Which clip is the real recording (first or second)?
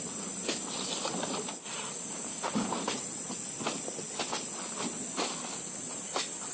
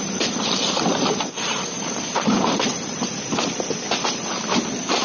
first